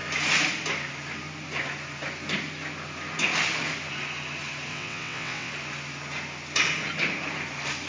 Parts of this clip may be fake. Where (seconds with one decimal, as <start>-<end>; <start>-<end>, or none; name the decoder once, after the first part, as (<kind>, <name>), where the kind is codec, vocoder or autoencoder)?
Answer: 4.7-5.5 (vocoder, WaveNeXt)